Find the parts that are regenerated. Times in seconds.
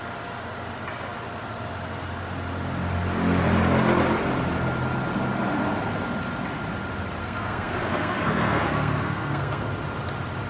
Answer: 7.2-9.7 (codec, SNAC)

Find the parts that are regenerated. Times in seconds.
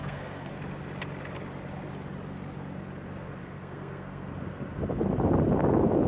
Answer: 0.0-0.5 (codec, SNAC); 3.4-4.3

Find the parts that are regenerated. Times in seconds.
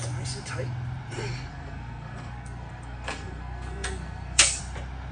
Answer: 1.5-4.6 (codec, SNAC)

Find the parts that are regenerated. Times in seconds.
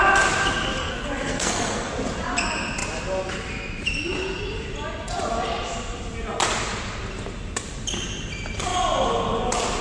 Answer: 0.8-1.9 (codec, SNAC)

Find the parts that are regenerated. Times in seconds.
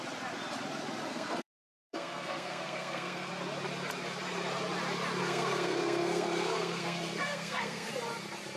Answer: 1.1-3.3 (codec, SNAC); 5.2-7.9